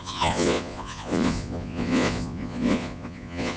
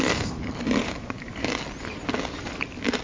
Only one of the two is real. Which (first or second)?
second